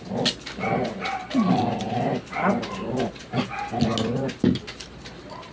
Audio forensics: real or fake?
real